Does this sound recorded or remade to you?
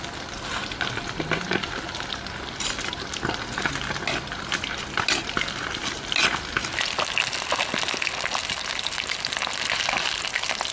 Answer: recorded